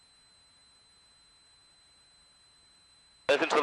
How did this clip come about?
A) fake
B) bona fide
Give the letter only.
B